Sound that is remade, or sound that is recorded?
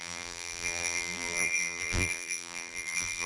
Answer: remade